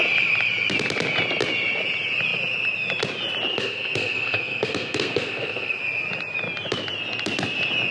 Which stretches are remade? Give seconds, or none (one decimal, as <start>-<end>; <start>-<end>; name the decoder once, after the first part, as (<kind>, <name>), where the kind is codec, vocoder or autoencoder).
3.5-5.8 (codec, SNAC)